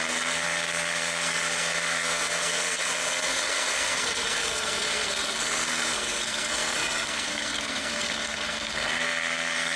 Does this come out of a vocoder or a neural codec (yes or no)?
yes